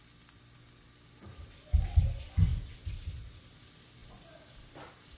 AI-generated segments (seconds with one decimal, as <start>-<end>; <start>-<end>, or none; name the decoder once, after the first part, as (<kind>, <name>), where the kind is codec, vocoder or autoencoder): none